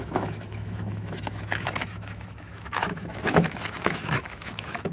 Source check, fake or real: fake